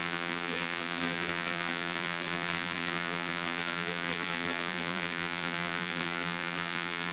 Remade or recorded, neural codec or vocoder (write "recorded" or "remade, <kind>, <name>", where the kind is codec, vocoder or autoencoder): remade, vocoder, BigVGAN v2